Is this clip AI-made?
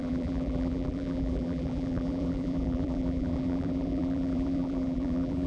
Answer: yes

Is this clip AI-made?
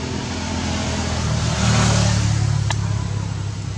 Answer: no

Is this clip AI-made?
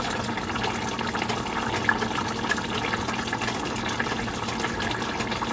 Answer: no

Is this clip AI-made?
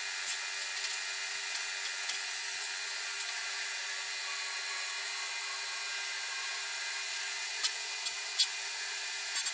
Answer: no